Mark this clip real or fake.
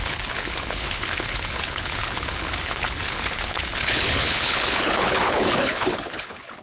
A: fake